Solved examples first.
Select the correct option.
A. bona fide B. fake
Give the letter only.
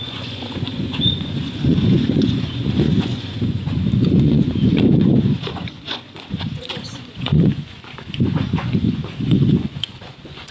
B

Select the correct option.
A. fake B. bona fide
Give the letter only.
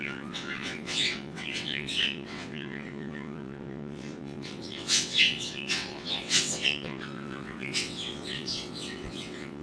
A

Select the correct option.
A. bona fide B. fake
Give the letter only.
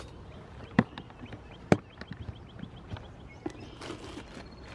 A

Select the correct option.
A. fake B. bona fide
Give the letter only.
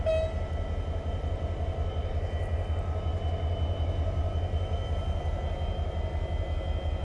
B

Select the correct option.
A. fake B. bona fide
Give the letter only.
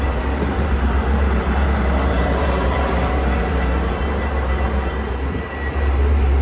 A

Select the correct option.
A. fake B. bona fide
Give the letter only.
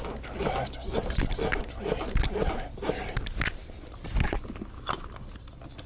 B